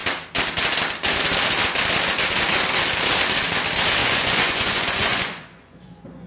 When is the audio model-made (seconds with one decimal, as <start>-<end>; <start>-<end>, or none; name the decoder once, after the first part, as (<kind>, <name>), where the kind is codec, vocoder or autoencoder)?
4.0-6.3 (vocoder, Vocos)